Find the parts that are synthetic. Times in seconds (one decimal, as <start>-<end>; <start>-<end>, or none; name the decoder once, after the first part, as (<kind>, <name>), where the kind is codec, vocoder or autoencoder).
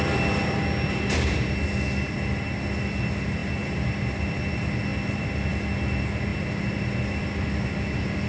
none